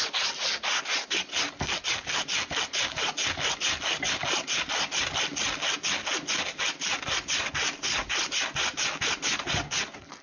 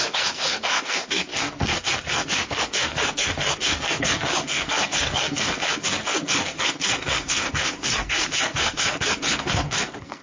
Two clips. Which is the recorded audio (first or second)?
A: first